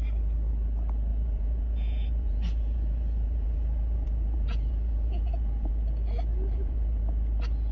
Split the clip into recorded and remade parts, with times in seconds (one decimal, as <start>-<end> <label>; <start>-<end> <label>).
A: 0.0-1.1 recorded; 1.1-5.7 remade; 5.7-6.3 recorded; 6.3-7.0 remade; 7.0-7.7 recorded